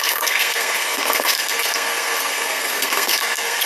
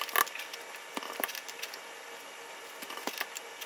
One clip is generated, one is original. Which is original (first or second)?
second